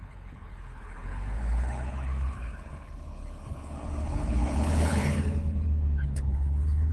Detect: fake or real fake